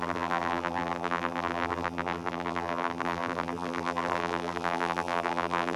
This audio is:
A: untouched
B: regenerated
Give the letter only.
B